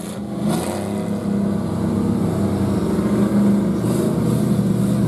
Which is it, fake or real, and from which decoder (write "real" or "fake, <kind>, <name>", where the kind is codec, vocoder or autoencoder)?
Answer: real